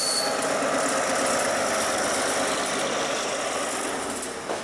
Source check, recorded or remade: recorded